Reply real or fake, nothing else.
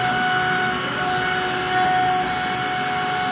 real